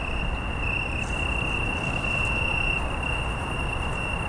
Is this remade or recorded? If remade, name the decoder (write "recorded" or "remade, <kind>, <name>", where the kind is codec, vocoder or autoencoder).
recorded